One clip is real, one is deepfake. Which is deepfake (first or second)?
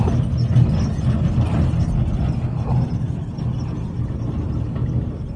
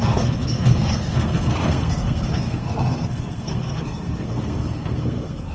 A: second